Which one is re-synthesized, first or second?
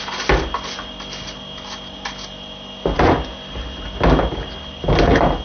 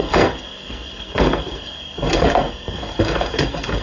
second